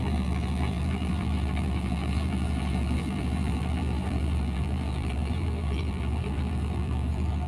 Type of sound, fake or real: fake